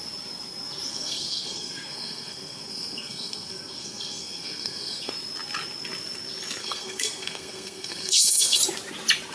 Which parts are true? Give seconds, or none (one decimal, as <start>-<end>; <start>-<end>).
0.0-0.9; 5.1-6.6; 8.6-9.3